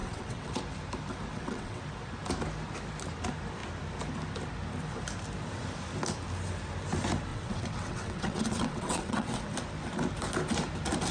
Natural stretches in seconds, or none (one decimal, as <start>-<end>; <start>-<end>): 0.6-1.3; 1.8-7.3; 9.4-11.1